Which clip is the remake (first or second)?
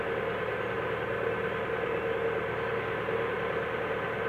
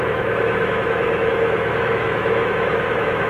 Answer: second